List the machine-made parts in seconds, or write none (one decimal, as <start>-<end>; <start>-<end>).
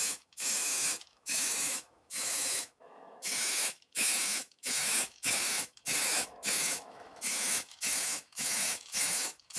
0.0-9.6